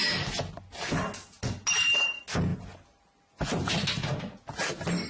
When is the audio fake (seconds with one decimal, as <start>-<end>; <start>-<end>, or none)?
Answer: 2.5-3.7